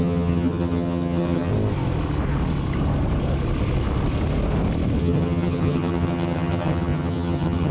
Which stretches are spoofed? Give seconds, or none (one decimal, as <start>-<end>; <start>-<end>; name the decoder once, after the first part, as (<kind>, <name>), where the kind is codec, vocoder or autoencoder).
0.0-1.5 (vocoder, HiFi-GAN); 5.0-7.7